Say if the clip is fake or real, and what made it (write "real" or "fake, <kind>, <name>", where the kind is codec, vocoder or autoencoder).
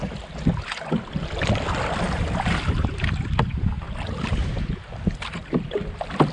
real